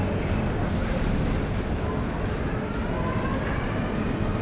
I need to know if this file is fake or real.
real